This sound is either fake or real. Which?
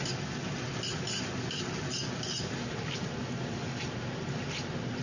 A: real